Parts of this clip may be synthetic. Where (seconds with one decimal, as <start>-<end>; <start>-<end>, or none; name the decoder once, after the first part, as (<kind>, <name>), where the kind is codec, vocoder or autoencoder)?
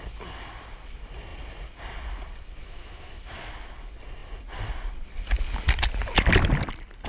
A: 2.6-3.5 (autoencoder, DAC-VAE)